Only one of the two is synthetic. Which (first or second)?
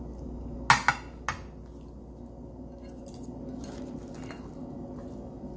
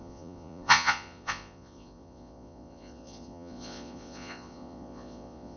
second